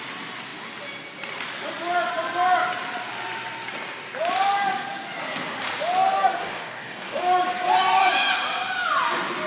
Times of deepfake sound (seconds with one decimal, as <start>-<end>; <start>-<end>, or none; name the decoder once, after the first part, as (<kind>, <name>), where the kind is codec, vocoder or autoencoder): 6.4-7.2 (codec, DAC)